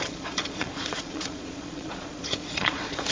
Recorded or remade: remade